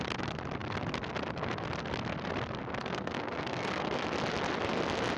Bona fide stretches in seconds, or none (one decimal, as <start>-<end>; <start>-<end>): 0.0-2.8; 4.0-5.2